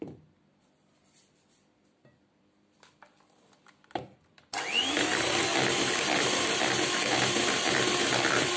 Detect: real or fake fake